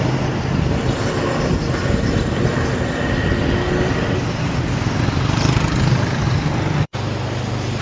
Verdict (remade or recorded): recorded